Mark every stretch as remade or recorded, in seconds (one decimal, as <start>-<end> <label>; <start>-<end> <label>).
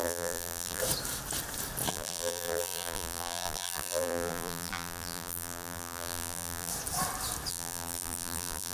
0.0-0.8 remade; 0.8-1.9 recorded; 1.9-6.7 remade; 6.7-7.5 recorded; 7.5-8.7 remade